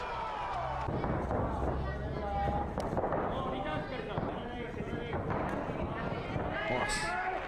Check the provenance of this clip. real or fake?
real